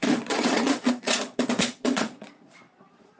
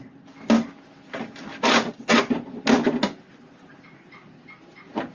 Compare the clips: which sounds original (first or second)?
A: second